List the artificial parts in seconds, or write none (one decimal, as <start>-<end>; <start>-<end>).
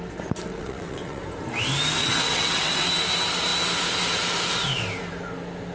0.5-1.2; 2.0-2.9